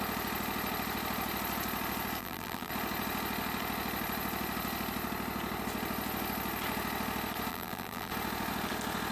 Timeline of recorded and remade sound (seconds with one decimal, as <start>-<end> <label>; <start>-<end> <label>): 0.0-2.2 recorded; 2.2-2.7 remade; 2.7-7.5 recorded; 7.5-8.1 remade; 8.1-9.1 recorded